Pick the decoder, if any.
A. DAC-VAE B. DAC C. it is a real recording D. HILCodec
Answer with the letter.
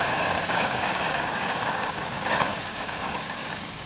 B